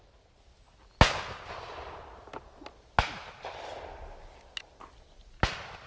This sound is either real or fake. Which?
real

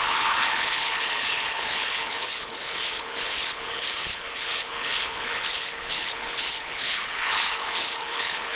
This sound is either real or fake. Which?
fake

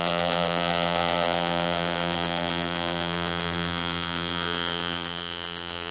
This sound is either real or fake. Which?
fake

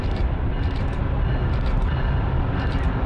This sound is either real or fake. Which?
real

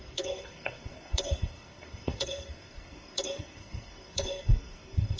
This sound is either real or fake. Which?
fake